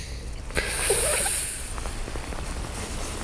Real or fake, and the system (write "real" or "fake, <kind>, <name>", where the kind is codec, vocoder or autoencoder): fake, vocoder, BigVGAN v2